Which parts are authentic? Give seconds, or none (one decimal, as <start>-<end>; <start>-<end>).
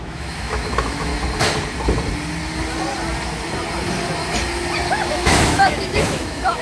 1.1-5.1